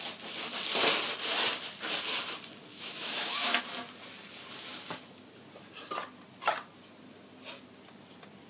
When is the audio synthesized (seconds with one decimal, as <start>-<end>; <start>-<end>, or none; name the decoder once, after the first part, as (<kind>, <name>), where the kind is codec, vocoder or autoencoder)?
2.7-3.6 (autoencoder, DAC-VAE)